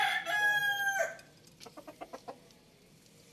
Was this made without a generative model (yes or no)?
yes